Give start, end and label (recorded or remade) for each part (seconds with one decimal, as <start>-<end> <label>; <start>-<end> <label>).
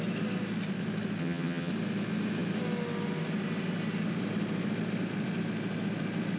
0.0-1.2 recorded; 1.2-1.7 remade; 1.7-6.4 recorded